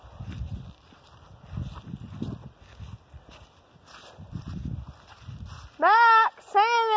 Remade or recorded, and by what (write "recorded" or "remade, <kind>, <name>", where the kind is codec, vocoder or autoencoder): recorded